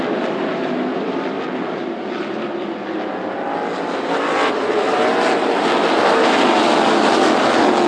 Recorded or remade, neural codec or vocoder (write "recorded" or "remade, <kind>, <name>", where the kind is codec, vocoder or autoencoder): recorded